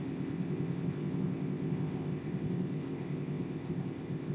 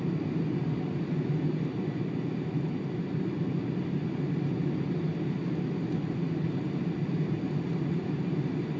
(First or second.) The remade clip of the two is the first